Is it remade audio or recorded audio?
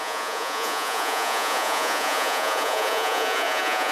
remade